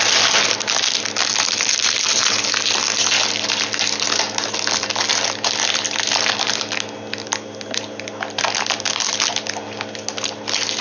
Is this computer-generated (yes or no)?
no